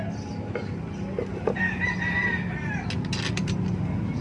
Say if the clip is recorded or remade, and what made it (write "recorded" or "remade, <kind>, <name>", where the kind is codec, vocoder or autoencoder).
recorded